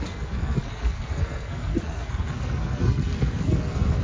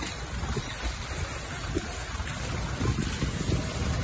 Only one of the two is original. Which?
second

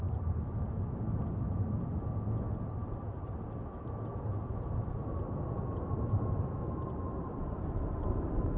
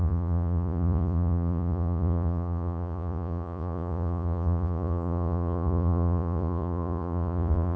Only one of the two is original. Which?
first